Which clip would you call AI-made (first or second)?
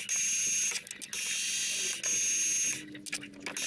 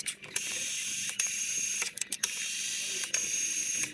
second